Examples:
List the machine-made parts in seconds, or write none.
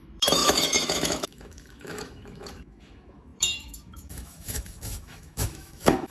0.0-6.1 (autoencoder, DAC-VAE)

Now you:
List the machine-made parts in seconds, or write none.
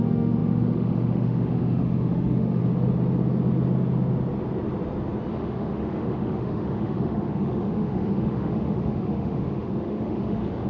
0.0-2.6 (autoencoder, DAC-VAE); 5.3-10.7